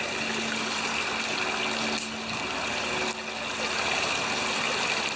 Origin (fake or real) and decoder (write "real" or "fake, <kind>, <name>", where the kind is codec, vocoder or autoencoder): real